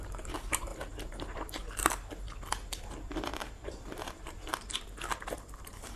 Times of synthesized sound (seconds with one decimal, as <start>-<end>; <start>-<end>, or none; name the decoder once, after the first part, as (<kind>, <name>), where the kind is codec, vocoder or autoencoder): 0.0-0.7 (vocoder, BigVGAN v2); 3.1-4.5; 5.5-6.0